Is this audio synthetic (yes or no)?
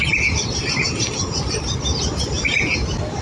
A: no